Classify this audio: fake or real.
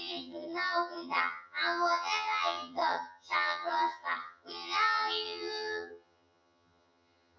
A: fake